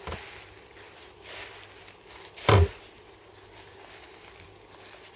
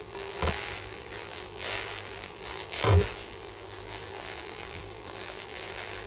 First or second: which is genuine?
first